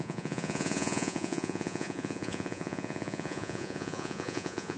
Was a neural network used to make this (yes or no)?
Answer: yes